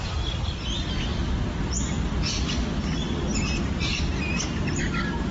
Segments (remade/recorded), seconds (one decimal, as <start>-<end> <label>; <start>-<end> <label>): 0.0-5.3 recorded

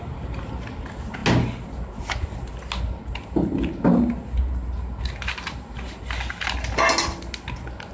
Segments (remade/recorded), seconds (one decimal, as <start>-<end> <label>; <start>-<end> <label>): 0.0-7.9 recorded

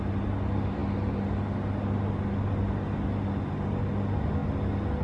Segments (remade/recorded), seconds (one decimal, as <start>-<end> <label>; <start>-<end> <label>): 0.0-5.0 recorded

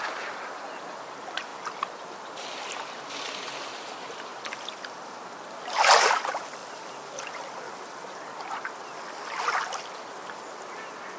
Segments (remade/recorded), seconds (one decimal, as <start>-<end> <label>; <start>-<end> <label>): 0.0-4.3 recorded; 4.3-5.2 remade; 5.2-6.6 recorded; 6.6-8.1 remade; 8.1-11.2 recorded

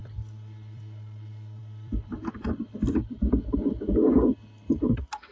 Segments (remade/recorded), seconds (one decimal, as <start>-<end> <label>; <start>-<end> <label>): 0.0-0.8 remade; 0.8-1.6 recorded; 1.6-3.2 remade; 3.2-5.3 recorded

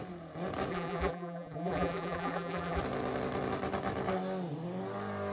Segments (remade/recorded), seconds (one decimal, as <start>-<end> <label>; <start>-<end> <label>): 0.0-0.7 recorded; 0.7-2.8 remade; 2.8-5.3 recorded